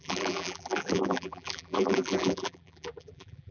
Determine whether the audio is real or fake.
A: fake